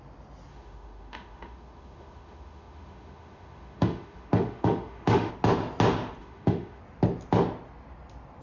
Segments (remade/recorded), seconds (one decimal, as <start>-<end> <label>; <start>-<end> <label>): 0.0-0.5 recorded; 0.5-5.3 remade; 5.3-6.2 recorded; 6.2-6.8 remade; 6.8-8.4 recorded